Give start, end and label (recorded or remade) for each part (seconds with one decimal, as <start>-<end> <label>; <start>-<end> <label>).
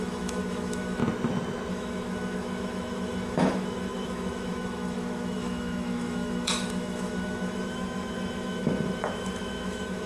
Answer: 0.0-1.0 remade; 1.0-1.7 recorded; 1.7-10.1 remade